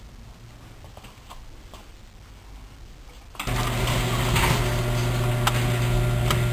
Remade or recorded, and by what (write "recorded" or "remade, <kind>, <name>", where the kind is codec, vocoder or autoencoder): recorded